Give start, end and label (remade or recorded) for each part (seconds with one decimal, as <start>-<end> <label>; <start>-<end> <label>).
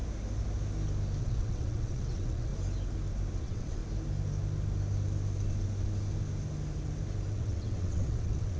0.0-1.2 recorded; 1.2-2.5 remade; 2.5-3.4 recorded; 3.4-3.8 remade; 3.8-7.3 recorded; 7.3-8.6 remade